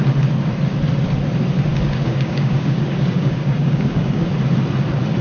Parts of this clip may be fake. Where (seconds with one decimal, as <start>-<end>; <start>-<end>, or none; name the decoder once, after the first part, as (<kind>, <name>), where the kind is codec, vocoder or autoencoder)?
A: 1.7-4.3 (codec, DAC)